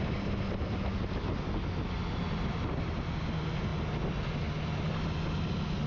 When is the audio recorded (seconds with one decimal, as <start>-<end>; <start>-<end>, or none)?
0.0-5.9